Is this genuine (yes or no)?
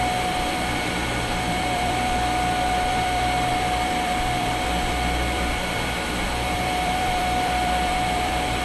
no